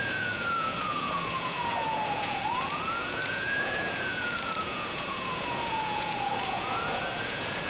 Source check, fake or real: fake